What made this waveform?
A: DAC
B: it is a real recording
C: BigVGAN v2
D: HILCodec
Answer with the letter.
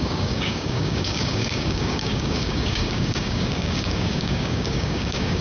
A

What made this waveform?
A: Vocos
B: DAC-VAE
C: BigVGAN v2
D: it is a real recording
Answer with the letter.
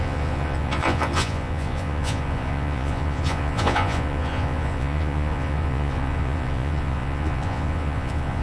A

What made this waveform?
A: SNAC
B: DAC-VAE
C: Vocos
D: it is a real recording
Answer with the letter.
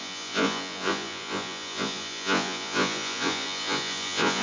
C